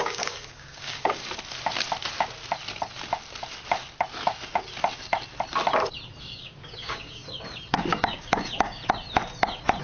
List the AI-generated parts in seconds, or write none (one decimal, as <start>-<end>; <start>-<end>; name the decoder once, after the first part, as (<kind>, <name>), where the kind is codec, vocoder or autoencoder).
0.0-1.2 (codec, DAC); 6.2-7.2; 7.7-8.8